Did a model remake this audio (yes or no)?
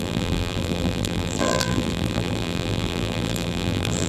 yes